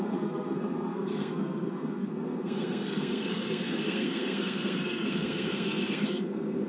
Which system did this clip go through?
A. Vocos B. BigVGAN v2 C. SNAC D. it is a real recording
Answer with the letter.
C